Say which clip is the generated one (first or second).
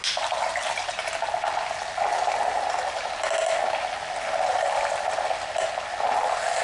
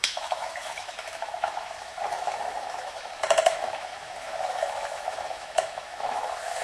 second